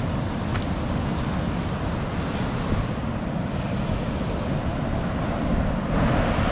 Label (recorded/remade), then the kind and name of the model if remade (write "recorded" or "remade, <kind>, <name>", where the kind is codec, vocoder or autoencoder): recorded